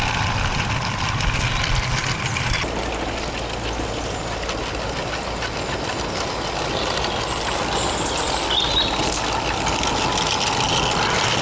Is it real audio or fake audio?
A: real